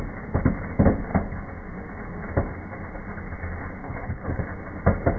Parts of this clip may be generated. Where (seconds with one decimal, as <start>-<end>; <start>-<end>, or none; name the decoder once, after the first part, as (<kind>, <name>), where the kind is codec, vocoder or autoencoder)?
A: 3.8-4.4 (codec, HILCodec)